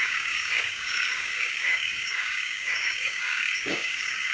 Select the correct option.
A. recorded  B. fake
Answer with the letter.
B